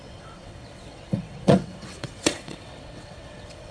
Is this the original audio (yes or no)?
no